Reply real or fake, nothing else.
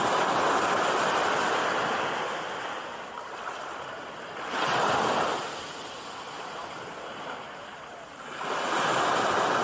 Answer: real